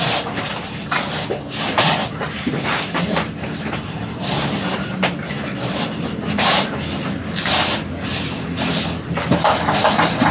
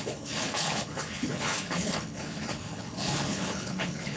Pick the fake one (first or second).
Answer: second